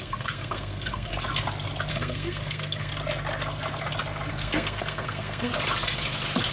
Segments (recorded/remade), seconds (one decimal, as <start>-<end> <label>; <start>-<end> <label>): 0.0-1.1 remade; 1.1-1.9 recorded; 1.9-2.9 remade; 2.9-4.3 recorded; 4.3-5.5 remade; 5.5-6.5 recorded